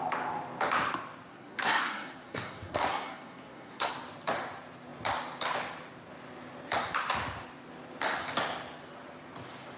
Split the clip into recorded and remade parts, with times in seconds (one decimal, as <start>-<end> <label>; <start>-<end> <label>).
0.0-1.3 recorded; 1.3-3.9 remade; 3.9-9.8 recorded